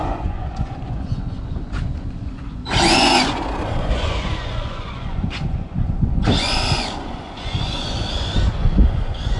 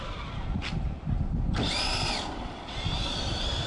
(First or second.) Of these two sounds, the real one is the second